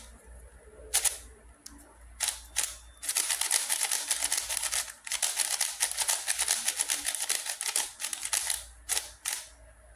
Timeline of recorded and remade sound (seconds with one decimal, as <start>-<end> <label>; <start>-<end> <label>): 0.0-10.0 recorded